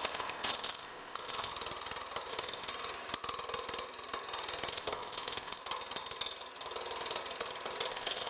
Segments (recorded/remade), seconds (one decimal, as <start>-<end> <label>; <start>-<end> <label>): 0.0-1.5 remade; 1.5-2.3 recorded; 2.3-2.7 remade; 2.7-4.7 recorded; 4.7-5.6 remade; 5.6-7.9 recorded; 7.9-8.3 remade